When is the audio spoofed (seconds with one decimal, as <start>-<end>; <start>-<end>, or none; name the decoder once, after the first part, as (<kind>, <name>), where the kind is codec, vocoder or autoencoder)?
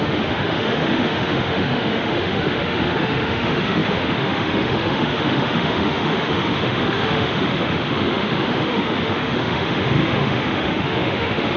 0.0-11.6 (autoencoder, DAC-VAE)